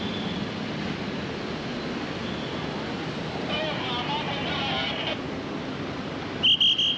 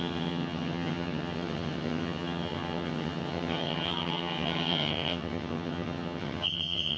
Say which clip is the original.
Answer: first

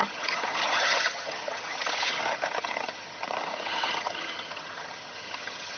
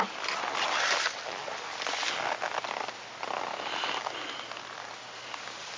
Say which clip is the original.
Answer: second